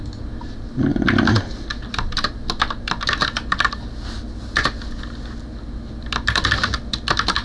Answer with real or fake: real